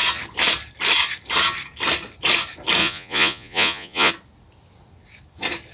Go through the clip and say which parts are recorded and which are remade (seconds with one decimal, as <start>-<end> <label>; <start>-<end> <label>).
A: 0.0-2.8 recorded; 2.8-4.1 remade; 4.1-5.7 recorded